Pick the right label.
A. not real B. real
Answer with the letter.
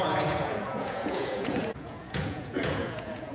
A